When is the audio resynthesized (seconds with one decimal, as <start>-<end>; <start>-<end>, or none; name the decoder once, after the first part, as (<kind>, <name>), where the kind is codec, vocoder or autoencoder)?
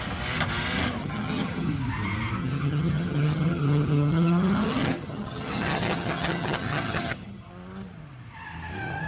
1.0-1.7 (vocoder, HiFi-GAN); 2.4-7.5